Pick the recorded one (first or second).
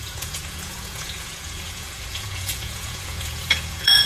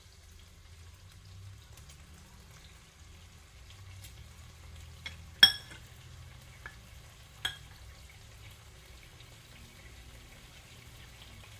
second